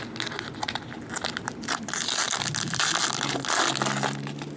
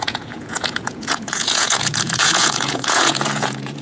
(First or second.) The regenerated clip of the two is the second